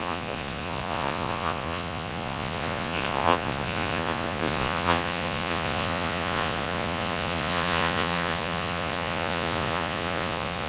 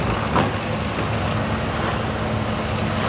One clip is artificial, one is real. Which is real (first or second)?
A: second